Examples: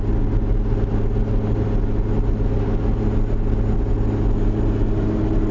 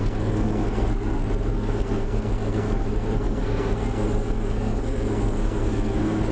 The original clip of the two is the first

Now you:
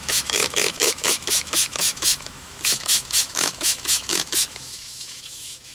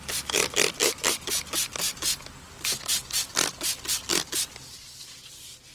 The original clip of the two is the second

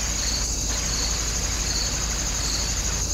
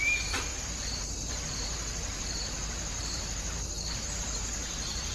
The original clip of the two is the first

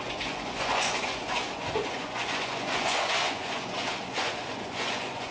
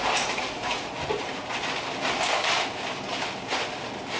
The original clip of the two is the second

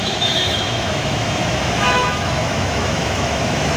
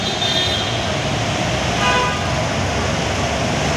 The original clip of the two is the second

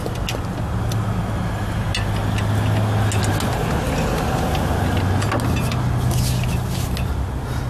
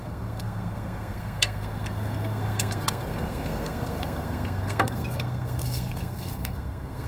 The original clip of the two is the first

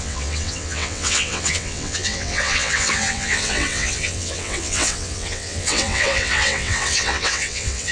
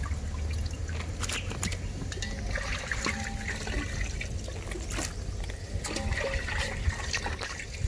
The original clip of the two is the second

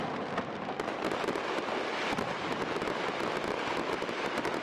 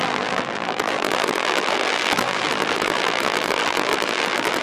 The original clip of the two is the first